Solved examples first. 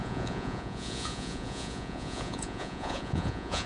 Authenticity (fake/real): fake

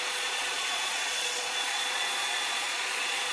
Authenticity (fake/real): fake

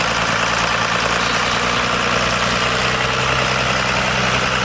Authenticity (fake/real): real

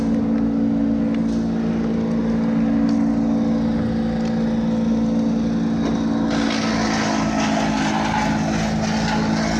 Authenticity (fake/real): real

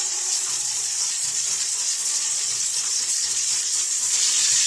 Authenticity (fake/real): fake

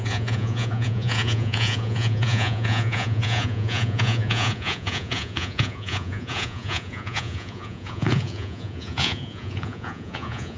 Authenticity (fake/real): fake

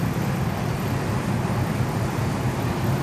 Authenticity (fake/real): real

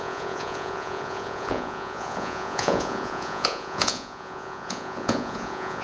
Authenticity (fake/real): fake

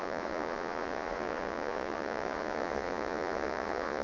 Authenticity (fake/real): fake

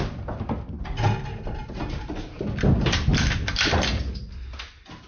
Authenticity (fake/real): real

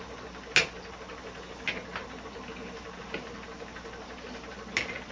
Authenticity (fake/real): real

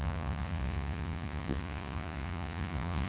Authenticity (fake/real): fake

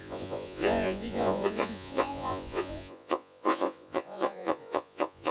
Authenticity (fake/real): fake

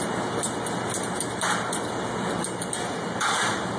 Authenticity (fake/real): real